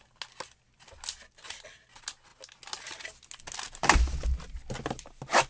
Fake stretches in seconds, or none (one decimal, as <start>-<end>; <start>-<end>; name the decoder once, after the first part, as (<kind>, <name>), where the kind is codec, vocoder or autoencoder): none